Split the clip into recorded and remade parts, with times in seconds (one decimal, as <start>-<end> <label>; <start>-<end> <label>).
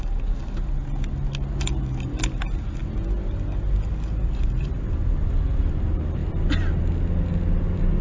0.0-6.2 recorded; 6.2-6.9 remade; 6.9-8.0 recorded